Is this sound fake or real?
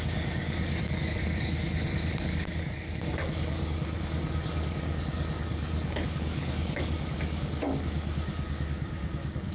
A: fake